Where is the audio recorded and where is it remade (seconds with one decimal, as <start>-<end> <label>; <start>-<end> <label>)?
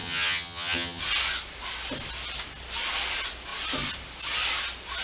0.0-1.0 remade; 1.0-5.0 recorded